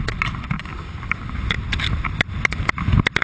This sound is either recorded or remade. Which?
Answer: recorded